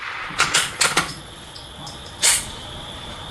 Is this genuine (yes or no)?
no